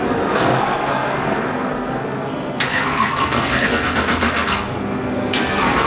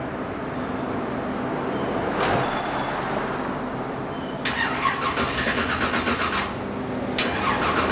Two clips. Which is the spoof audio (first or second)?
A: first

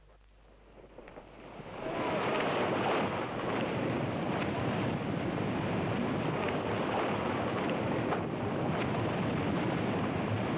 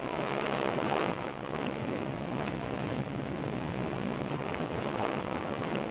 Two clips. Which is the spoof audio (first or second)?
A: second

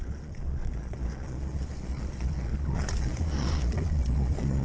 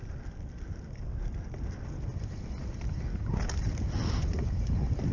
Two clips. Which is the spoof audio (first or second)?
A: first